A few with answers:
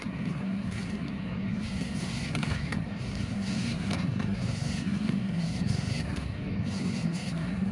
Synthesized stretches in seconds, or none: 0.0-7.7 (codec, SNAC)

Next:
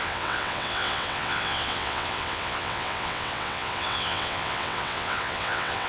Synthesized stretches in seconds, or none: 0.0-5.9 (vocoder, WaveNeXt)

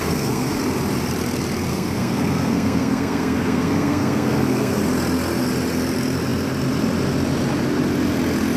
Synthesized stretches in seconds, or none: 0.0-0.6 (codec, SNAC); 1.7-4.8

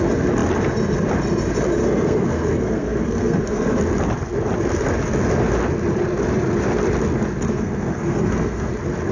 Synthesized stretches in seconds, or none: 1.8-3.8 (codec, SNAC); 7.5-8.7

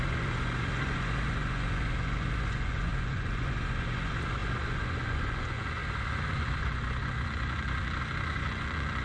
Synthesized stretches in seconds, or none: 0.0-9.0 (vocoder, Vocos)

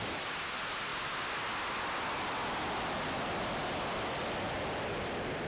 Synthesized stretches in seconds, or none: none